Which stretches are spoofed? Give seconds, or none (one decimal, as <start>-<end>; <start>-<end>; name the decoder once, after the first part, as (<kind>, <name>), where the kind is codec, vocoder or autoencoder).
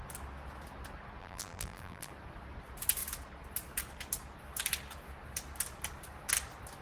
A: 1.2-2.1 (vocoder, BigVGAN v2)